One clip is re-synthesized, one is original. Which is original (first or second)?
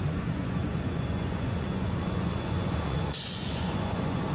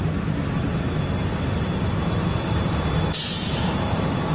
second